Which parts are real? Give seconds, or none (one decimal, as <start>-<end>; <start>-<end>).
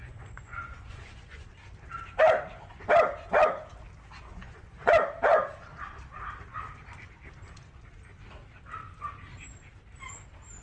1.5-4.3; 4.9-10.6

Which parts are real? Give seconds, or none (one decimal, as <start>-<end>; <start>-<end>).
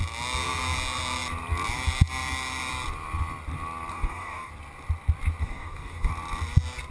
0.0-3.9; 4.5-5.4; 6.1-6.9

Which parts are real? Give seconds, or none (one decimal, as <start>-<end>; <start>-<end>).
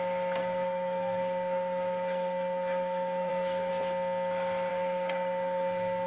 0.0-0.4; 3.7-4.7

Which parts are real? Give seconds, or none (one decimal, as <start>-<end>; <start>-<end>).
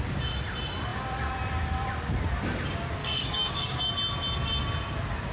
0.0-3.0; 3.9-5.3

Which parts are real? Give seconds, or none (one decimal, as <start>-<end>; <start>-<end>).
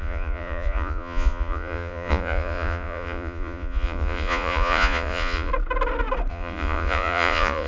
5.5-6.3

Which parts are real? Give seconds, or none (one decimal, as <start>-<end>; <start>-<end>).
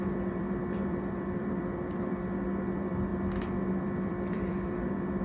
3.1-3.7